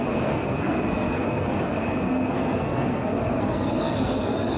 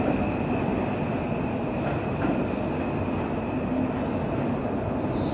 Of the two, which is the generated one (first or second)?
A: first